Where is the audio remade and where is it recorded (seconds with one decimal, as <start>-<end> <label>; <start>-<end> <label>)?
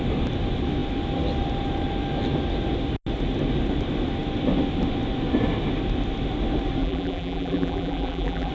0.0-6.8 recorded; 6.8-8.5 remade